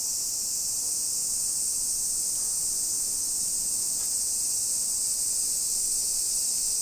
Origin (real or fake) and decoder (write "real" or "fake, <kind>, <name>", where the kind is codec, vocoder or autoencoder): real